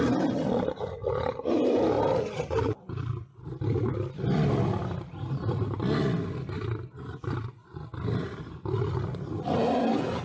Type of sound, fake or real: real